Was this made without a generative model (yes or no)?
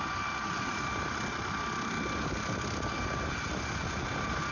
yes